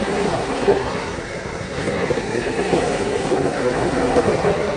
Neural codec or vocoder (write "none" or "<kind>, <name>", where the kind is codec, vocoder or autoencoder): codec, SNAC